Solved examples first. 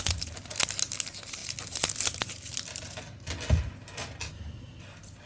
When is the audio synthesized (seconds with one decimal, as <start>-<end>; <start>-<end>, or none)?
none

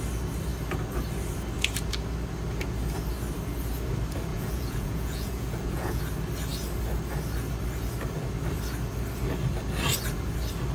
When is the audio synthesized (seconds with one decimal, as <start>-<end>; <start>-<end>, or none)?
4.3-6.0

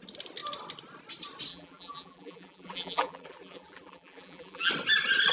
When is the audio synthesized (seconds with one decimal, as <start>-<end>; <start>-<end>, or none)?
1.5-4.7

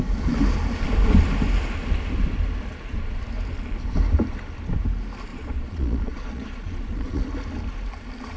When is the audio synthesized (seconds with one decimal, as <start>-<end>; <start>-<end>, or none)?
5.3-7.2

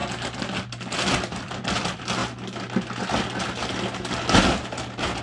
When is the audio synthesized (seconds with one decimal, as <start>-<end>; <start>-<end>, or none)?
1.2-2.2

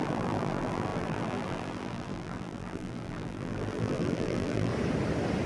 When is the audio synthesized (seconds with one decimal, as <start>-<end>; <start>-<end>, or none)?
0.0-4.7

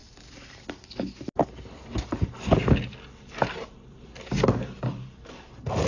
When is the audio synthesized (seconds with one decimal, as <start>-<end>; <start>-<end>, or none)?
none